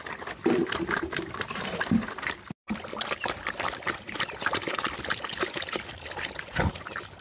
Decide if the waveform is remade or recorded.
remade